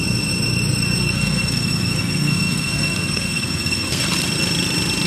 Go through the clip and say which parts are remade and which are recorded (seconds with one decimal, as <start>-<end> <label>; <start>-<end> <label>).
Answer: 0.0-1.0 recorded; 1.0-4.0 remade; 4.0-5.1 recorded